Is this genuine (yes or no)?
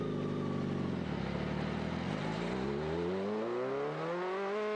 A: yes